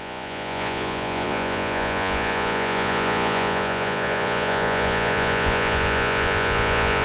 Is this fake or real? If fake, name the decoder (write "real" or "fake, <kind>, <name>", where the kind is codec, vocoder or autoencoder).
fake, vocoder, Vocos